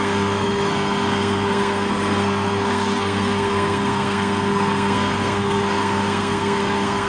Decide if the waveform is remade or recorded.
remade